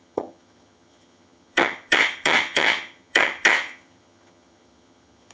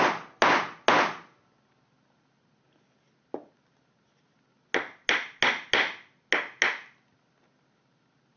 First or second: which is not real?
first